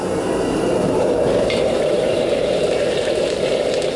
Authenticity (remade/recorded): remade